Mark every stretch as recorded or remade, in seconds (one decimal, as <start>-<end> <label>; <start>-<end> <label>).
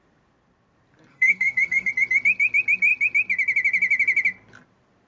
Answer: 0.0-1.1 recorded; 1.1-1.9 remade; 1.9-5.1 recorded